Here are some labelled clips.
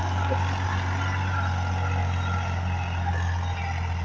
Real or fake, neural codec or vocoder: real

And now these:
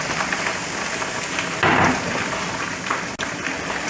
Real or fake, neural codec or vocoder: real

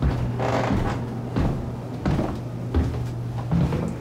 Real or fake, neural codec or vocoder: real